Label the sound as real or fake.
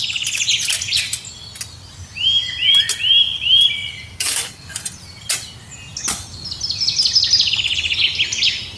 real